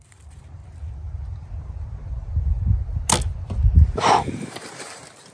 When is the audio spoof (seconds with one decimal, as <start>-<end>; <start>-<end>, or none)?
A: 0.0-0.6; 3.8-5.3